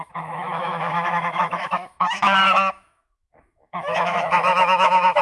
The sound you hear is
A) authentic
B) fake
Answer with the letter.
B